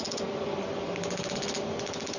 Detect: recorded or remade recorded